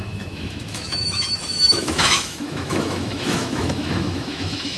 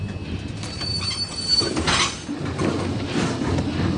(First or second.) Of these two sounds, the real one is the second